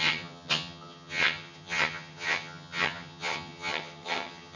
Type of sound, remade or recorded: remade